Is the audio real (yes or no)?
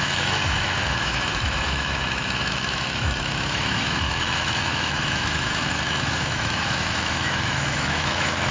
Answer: no